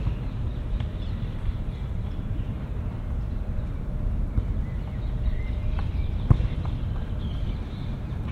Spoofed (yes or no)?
yes